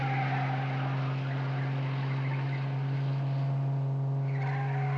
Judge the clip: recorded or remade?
recorded